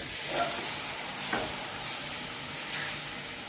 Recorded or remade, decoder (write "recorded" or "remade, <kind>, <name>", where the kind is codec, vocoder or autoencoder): recorded